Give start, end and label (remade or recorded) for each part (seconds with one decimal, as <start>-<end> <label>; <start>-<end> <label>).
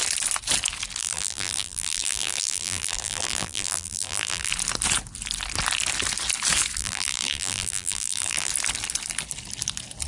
0.0-1.0 recorded; 1.0-4.5 remade; 4.5-6.8 recorded; 6.8-8.5 remade; 8.5-10.1 recorded